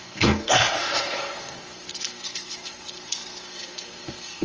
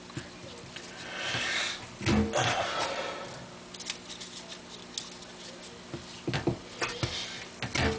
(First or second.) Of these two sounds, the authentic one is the second